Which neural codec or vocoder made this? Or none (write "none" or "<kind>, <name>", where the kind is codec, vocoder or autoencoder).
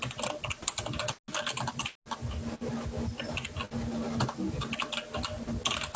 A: none